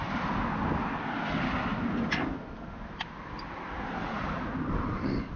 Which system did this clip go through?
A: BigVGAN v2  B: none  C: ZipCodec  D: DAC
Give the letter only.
B